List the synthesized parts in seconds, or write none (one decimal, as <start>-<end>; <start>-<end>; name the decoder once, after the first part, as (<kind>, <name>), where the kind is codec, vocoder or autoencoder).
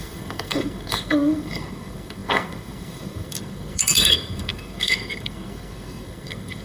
0.0-6.6 (codec, SNAC)